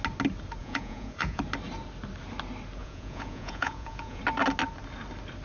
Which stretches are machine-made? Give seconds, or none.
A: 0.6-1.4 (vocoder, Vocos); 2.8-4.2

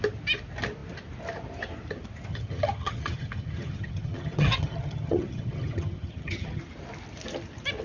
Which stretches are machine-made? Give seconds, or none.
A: 2.3-6.6 (vocoder, HiFi-GAN)

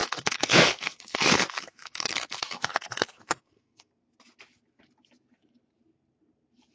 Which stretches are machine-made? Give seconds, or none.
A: 0.0-3.9 (codec, SNAC)